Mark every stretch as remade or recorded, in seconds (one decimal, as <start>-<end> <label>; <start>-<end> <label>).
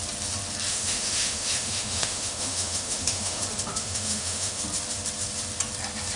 0.0-0.7 recorded; 0.7-3.4 remade; 3.4-3.8 recorded; 3.8-4.6 remade; 4.6-6.2 recorded